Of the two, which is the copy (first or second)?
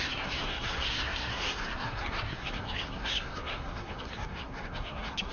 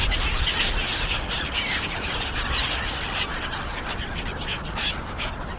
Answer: first